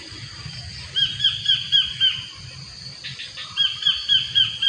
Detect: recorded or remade recorded